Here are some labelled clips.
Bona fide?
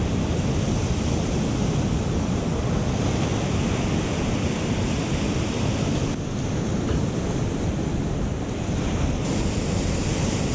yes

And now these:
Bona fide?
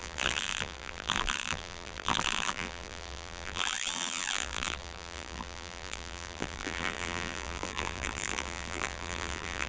no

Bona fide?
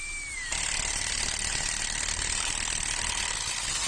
yes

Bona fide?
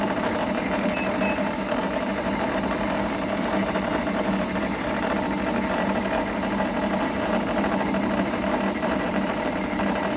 no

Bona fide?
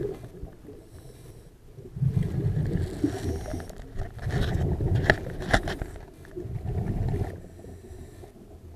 yes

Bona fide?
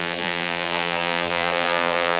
no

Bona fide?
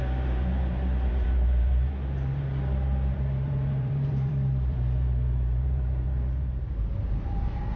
no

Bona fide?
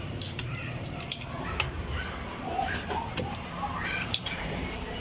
no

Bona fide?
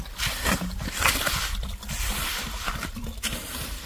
no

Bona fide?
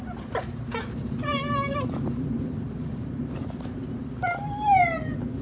no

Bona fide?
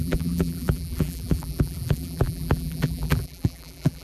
no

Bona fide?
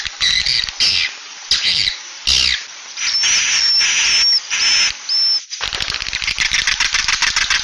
yes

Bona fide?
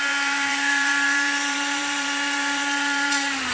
no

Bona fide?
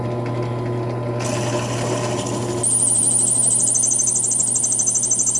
yes